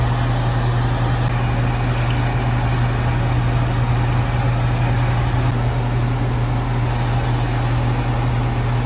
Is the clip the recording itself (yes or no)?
yes